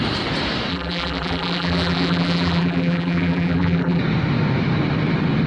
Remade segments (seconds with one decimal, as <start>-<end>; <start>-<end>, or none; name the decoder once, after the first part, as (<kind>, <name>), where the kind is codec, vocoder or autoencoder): 0.7-4.0 (vocoder, BigVGAN v2)